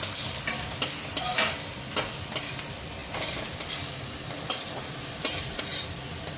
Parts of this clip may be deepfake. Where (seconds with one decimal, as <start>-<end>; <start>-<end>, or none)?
none